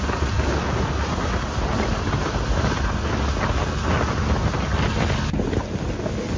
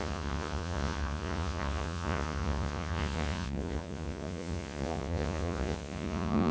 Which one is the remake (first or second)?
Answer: second